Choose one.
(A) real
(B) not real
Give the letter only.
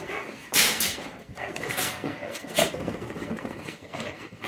B